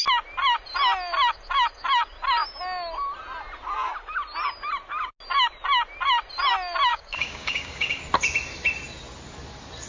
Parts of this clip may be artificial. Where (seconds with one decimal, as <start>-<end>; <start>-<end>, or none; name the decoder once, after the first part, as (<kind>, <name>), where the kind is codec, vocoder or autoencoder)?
6.9-8.0 (codec, DAC)